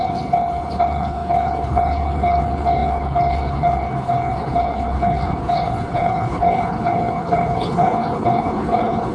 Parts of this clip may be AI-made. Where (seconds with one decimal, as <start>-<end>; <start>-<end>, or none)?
0.0-9.1